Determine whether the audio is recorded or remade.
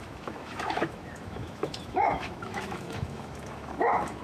remade